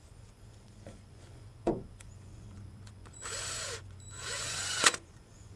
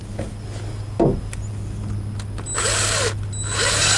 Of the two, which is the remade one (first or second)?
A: first